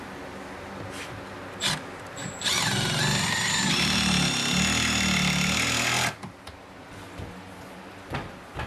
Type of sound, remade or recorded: recorded